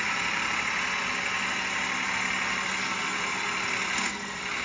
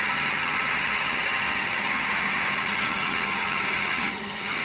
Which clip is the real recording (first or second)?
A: first